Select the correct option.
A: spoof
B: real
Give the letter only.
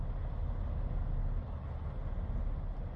B